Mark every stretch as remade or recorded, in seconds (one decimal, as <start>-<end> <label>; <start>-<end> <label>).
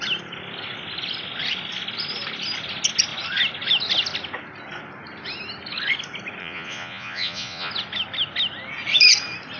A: 0.0-6.4 recorded; 6.4-7.7 remade; 7.7-9.6 recorded